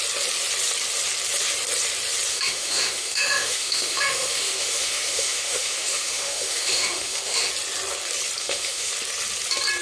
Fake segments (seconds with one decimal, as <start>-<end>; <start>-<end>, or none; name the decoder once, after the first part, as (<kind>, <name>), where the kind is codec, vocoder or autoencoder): 2.3-7.5 (autoencoder, DAC-VAE); 8.4-8.9